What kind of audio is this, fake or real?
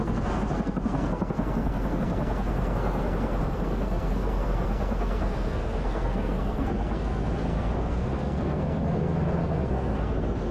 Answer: fake